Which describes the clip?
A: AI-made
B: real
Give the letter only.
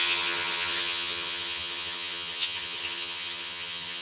A